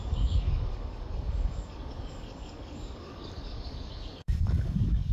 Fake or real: fake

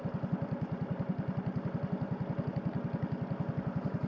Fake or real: real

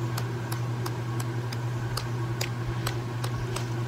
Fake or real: real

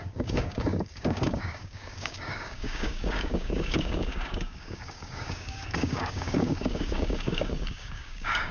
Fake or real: fake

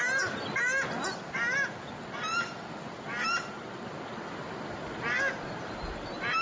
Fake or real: real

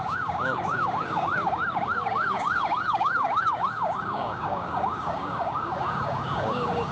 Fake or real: fake